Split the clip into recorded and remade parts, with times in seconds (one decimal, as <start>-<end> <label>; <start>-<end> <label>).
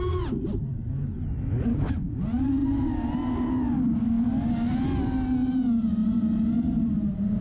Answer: 0.0-1.7 recorded; 1.7-2.2 remade; 2.2-7.4 recorded